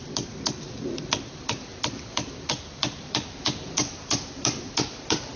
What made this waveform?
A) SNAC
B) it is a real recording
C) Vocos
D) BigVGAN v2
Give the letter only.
D